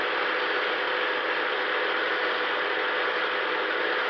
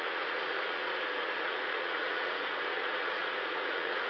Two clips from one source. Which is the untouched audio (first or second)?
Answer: first